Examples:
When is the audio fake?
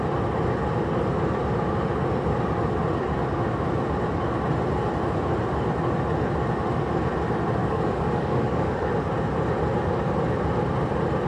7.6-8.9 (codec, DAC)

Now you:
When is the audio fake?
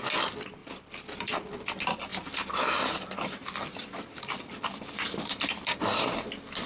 0.6-1.3 (vocoder, BigVGAN v2); 2.1-5.8